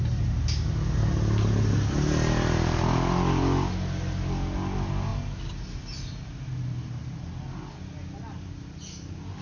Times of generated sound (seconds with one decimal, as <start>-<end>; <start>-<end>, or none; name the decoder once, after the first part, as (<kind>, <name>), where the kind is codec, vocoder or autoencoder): none